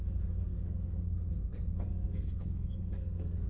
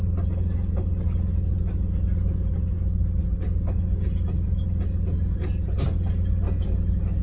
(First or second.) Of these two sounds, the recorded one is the second